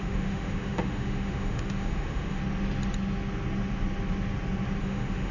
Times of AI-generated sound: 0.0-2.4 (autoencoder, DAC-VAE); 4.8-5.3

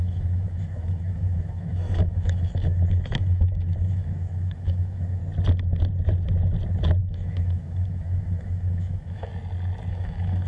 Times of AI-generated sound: 0.0-5.2 (autoencoder, DAC-VAE); 7.0-9.3; 9.9-10.5

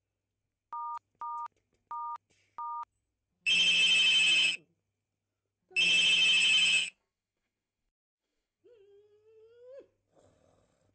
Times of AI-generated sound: 6.8-8.6 (autoencoder, DAC-VAE)

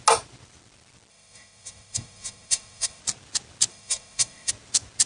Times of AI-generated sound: 1.1-3.0 (autoencoder, DAC-VAE); 3.7-4.5

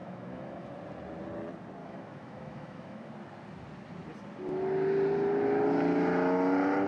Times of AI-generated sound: 0.0-0.7 (autoencoder, DAC-VAE); 1.8-3.1

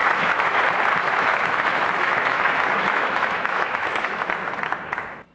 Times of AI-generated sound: 0.0-0.6 (autoencoder, DAC-VAE); 1.0-4.2

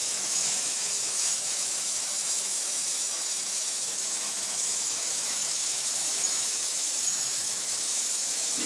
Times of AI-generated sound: 0.0-8.7 (autoencoder, DAC-VAE)

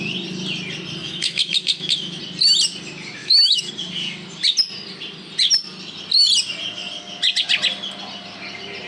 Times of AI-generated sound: 1.0-2.2 (autoencoder, DAC-VAE); 3.2-3.7